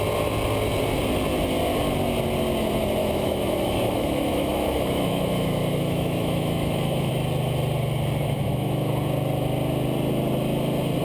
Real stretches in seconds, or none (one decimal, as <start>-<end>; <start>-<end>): 0.0-3.0; 7.1-8.2; 8.9-11.0